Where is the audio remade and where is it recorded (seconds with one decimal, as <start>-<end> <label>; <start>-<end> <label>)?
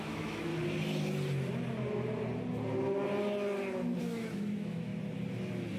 0.0-0.5 remade; 0.5-4.0 recorded; 4.0-4.9 remade; 4.9-5.8 recorded